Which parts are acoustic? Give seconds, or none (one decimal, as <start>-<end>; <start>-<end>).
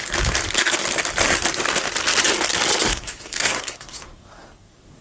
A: 0.0-2.9